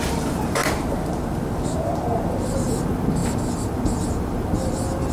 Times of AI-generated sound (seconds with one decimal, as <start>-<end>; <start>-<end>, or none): 0.0-0.6; 2.4-5.1